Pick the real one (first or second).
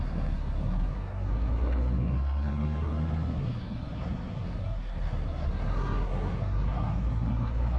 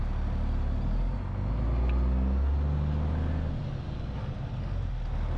second